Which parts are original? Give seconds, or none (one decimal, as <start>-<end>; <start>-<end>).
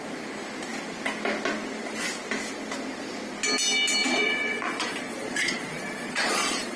0.0-4.0